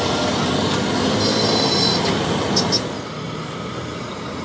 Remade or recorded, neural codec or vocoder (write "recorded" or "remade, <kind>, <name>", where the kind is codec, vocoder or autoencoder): recorded